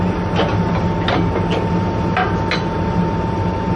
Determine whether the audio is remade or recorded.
recorded